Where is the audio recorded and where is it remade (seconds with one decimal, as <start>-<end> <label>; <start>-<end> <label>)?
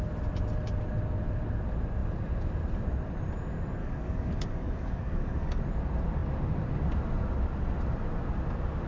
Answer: 0.0-3.8 recorded; 3.8-5.6 remade; 5.6-8.9 recorded